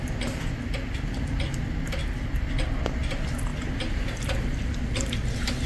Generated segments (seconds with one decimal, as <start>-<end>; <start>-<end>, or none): none